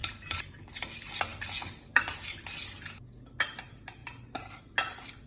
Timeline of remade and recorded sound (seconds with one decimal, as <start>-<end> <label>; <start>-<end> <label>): 0.0-0.9 remade; 0.9-4.0 recorded; 4.0-4.5 remade; 4.5-5.3 recorded